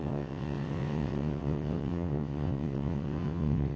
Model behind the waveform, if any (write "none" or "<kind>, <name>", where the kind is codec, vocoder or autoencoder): vocoder, WaveNeXt